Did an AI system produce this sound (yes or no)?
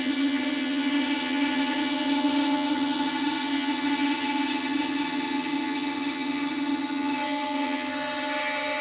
yes